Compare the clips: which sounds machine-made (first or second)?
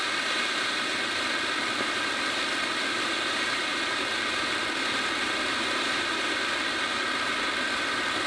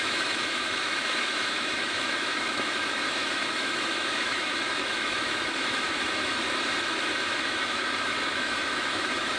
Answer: second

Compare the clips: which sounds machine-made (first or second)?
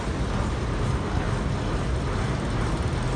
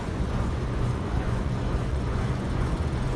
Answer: second